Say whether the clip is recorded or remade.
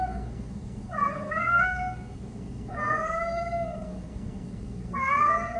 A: remade